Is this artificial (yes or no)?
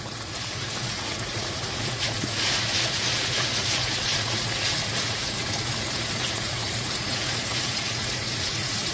yes